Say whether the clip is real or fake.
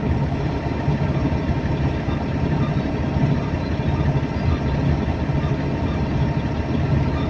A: fake